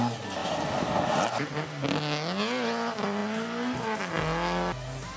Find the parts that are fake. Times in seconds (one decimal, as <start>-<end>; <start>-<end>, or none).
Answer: none